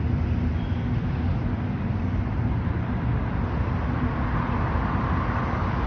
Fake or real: real